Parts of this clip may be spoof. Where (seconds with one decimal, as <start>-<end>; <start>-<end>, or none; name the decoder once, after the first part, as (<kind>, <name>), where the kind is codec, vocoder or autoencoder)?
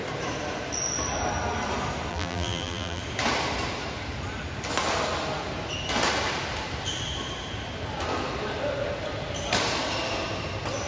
2.1-3.0 (vocoder, BigVGAN v2)